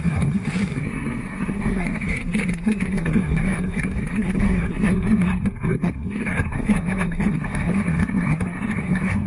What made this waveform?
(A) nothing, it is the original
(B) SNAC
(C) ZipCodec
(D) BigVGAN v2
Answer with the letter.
B